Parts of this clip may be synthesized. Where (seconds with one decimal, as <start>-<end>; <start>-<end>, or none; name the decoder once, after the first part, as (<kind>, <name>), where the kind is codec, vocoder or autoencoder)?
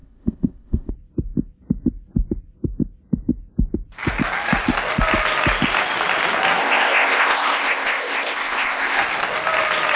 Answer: 0.0-0.9 (codec, ZipCodec); 6.6-9.0